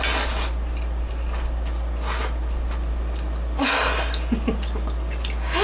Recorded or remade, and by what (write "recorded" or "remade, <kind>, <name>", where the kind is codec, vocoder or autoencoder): recorded